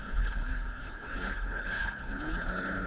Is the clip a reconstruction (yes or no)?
yes